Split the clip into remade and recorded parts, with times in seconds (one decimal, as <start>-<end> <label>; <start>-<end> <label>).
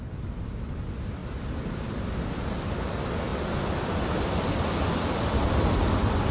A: 0.0-3.3 recorded; 3.3-3.9 remade; 3.9-6.3 recorded